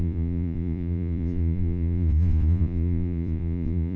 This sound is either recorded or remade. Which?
remade